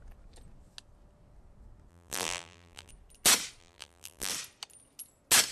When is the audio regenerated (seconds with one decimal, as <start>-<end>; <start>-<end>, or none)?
1.9-2.9; 3.6-4.3